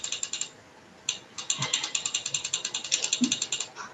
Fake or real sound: real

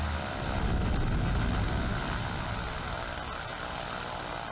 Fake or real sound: real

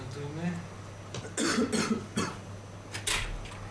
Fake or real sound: real